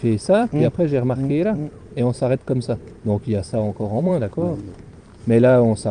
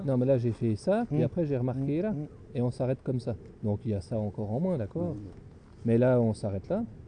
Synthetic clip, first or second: first